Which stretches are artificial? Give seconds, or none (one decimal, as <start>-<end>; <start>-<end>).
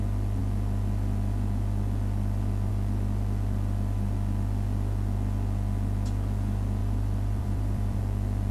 6.8-8.0